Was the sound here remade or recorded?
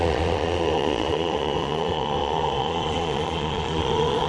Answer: remade